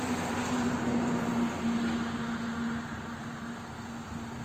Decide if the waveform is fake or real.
real